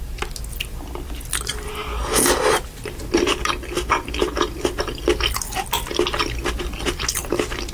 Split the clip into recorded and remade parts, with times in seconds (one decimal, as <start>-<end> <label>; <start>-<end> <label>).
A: 0.0-7.7 recorded